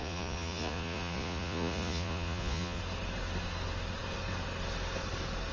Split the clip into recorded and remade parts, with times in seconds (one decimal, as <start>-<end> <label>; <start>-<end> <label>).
0.0-2.8 remade; 2.8-5.5 recorded